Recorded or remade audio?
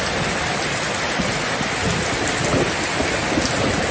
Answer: recorded